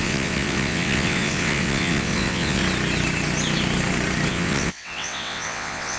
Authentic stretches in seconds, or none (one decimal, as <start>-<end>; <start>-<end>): 2.6-4.3